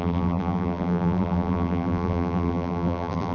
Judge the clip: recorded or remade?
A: remade